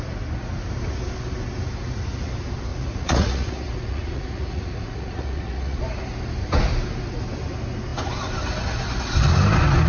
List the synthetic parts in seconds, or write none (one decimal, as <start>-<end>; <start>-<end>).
2.7-5.8